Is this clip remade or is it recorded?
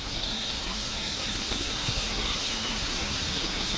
remade